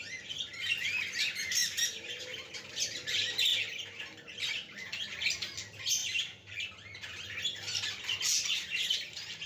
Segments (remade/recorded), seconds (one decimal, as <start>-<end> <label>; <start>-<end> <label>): 0.0-1.6 recorded; 1.6-2.2 remade; 2.2-6.0 recorded; 6.0-6.7 remade; 6.7-9.5 recorded